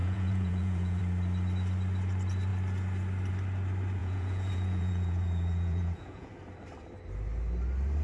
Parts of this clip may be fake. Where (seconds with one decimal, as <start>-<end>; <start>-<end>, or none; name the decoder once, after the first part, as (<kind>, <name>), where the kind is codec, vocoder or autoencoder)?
0.0-1.0 (vocoder, Vocos); 4.0-6.3